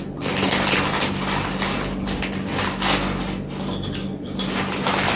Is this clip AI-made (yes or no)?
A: no